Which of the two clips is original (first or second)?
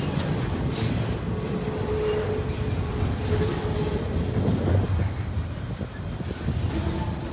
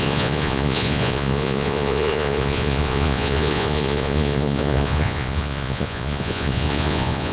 first